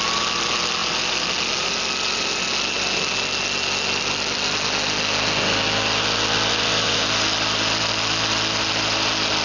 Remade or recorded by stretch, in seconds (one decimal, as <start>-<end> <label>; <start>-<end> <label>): 0.0-9.4 recorded